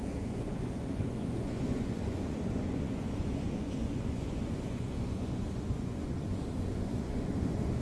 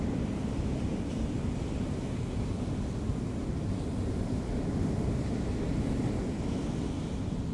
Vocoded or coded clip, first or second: first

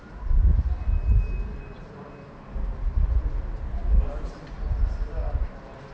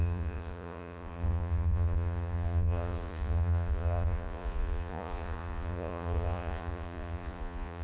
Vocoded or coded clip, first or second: second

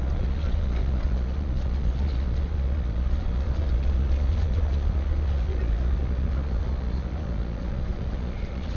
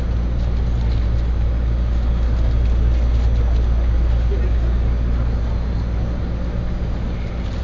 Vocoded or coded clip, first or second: first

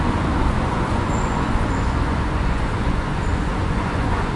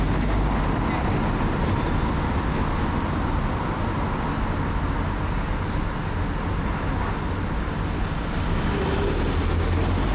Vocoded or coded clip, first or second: first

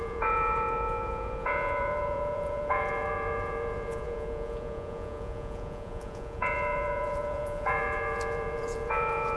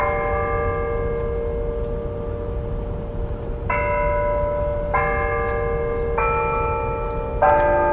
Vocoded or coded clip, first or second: first